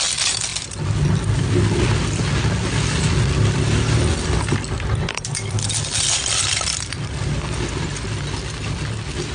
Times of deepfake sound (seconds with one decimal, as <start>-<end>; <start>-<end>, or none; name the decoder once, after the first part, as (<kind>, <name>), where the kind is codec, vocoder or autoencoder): none

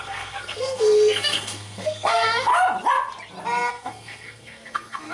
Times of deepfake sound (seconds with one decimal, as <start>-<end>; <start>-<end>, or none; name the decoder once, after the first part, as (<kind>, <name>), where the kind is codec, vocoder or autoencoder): 0.0-2.5 (codec, SNAC); 3.7-5.1

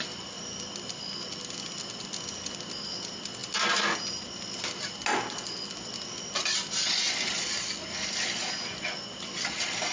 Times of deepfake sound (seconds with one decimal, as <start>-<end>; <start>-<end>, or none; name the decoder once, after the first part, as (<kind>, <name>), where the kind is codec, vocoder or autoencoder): none

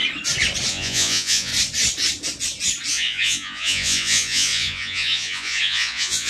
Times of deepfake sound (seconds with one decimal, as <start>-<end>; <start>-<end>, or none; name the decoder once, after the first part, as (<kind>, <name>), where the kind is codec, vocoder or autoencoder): 0.7-1.5 (vocoder, Vocos); 2.9-6.3

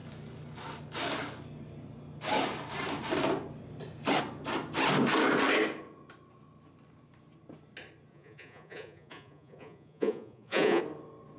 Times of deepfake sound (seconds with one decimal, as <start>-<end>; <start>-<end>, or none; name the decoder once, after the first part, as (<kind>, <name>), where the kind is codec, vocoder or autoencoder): 8.1-10.8 (vocoder, Vocos)

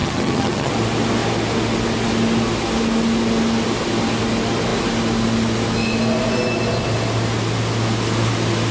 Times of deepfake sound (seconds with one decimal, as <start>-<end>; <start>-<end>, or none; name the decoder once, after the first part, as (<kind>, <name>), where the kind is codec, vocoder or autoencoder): 0.0-0.7 (vocoder, HiFi-GAN)